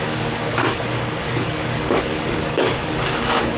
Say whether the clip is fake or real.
fake